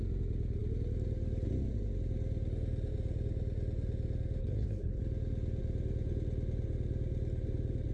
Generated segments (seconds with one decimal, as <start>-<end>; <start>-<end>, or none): 4.4-5.0